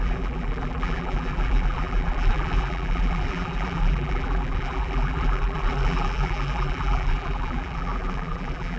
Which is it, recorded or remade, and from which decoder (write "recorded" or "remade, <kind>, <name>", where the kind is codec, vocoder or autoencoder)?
remade, vocoder, BigVGAN v2